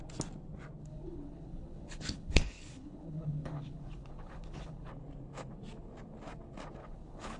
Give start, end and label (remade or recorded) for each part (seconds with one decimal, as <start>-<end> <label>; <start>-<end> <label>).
0.0-0.8 recorded; 0.8-4.9 remade; 4.9-6.8 recorded; 6.8-7.4 remade